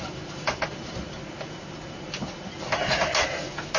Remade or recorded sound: recorded